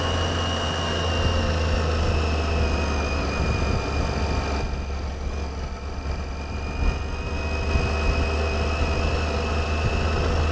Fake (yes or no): no